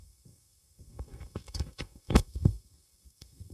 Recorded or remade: remade